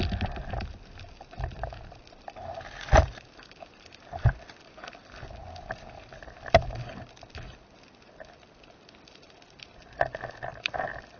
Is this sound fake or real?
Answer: real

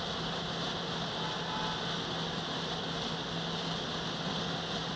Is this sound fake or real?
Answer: real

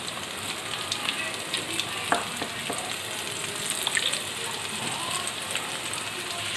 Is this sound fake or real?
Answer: real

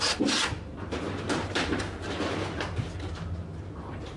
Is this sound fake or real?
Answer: real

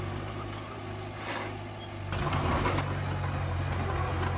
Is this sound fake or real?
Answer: real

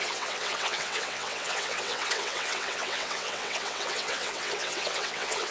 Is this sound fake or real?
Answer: fake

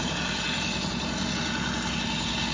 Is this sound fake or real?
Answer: fake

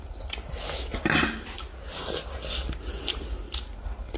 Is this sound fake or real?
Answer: real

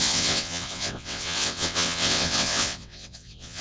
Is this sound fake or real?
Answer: fake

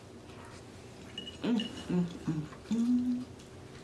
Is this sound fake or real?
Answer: real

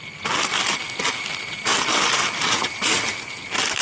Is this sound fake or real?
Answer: real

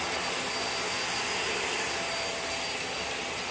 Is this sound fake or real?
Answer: real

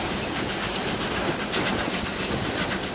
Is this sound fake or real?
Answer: real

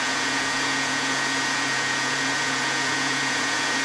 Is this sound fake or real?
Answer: fake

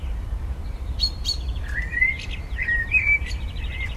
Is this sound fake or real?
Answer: fake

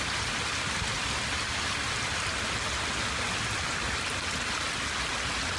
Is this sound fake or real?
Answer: real